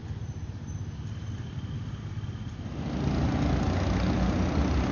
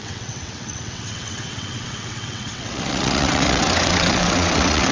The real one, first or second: first